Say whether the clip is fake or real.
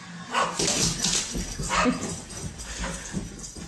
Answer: real